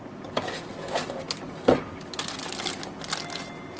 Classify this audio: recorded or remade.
recorded